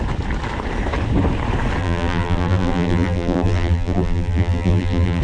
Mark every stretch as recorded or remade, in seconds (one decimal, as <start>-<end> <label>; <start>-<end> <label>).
0.0-1.8 recorded; 1.8-5.2 remade